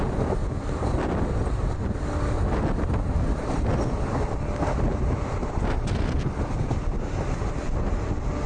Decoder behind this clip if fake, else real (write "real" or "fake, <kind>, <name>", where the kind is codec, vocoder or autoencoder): real